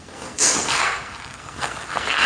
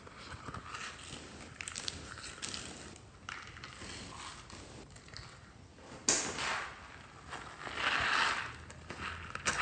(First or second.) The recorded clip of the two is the second